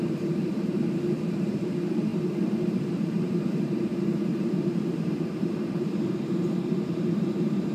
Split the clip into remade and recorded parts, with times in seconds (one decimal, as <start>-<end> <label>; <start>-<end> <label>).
0.0-7.7 remade

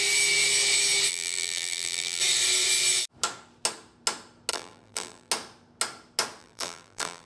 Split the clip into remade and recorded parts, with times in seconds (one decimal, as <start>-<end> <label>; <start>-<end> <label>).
0.0-1.1 recorded; 1.1-2.2 remade; 2.2-4.5 recorded; 4.5-5.3 remade; 5.3-6.4 recorded; 6.4-7.3 remade